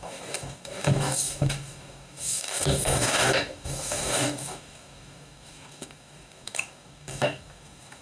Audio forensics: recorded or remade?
remade